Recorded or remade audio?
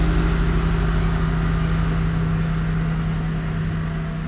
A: recorded